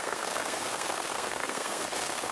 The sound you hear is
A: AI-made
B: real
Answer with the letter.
A